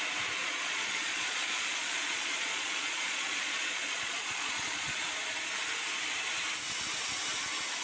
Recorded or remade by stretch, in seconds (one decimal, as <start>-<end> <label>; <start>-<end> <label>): 0.0-0.4 recorded; 0.4-5.1 remade; 5.1-7.8 recorded